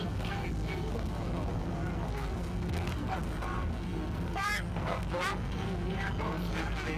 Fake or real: fake